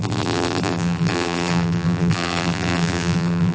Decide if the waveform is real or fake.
fake